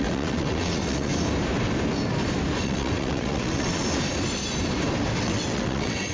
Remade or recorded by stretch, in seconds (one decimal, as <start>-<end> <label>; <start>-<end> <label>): 0.0-1.1 remade; 1.1-2.6 recorded; 2.6-3.8 remade; 3.8-5.2 recorded; 5.2-6.1 remade